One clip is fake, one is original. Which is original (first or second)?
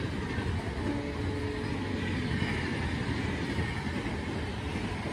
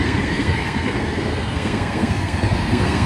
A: first